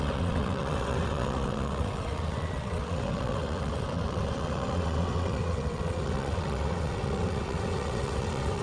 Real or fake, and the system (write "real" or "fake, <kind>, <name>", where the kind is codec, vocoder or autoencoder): fake, vocoder, WaveNeXt